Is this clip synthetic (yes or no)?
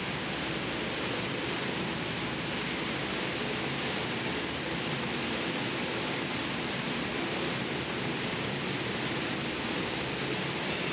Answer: no